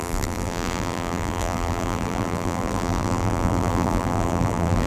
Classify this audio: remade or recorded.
remade